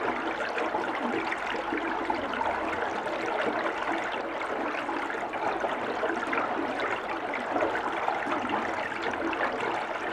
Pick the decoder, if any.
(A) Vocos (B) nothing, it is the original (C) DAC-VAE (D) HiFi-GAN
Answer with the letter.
B